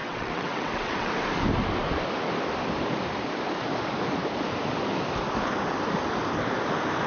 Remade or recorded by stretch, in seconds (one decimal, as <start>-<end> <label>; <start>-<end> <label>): 0.0-1.1 remade; 1.1-7.1 recorded

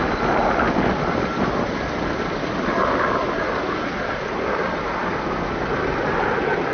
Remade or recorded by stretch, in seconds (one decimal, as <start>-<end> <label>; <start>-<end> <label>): 0.0-6.7 recorded

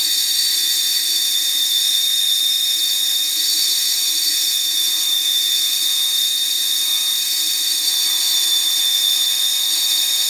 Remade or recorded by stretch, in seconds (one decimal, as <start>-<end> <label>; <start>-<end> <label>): 0.0-10.3 remade